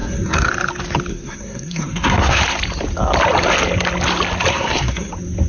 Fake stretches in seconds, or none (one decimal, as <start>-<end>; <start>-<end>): 0.0-0.5; 1.1-2.4; 4.5-5.1